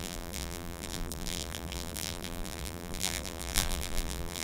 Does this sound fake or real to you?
fake